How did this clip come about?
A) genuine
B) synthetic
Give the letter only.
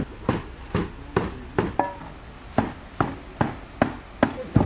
A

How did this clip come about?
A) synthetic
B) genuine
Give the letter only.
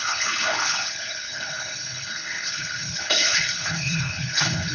A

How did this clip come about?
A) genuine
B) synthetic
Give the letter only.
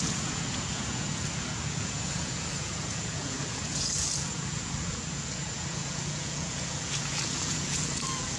B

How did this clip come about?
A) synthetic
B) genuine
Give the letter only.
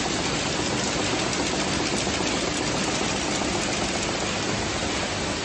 B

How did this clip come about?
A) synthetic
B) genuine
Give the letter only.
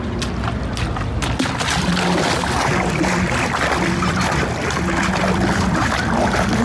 B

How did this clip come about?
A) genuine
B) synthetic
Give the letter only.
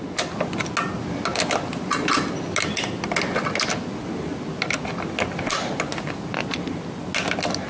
A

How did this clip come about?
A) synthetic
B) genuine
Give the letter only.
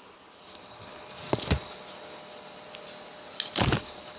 B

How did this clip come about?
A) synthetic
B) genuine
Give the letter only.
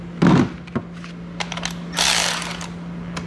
B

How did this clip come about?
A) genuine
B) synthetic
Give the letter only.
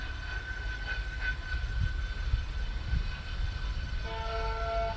A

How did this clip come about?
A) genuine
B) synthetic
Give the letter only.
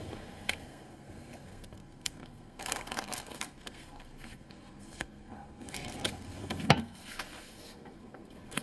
B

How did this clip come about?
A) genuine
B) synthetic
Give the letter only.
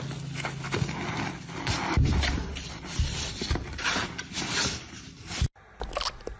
A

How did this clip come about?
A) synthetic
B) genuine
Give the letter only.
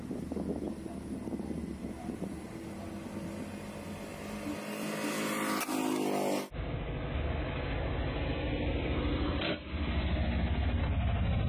B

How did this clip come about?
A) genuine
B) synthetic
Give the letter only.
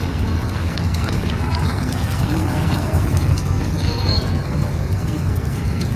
B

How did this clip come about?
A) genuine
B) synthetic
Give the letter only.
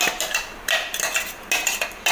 A